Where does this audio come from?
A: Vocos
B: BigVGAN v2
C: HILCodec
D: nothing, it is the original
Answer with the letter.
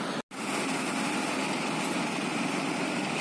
D